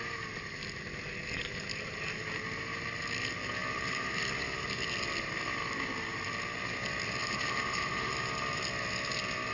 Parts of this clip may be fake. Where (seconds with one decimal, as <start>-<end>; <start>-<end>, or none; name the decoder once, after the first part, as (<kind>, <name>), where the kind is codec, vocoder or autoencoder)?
7.2-8.1 (vocoder, BigVGAN v2)